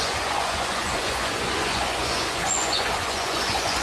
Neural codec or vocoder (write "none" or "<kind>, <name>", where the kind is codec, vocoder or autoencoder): vocoder, Vocos